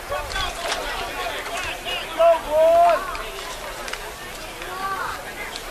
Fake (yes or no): no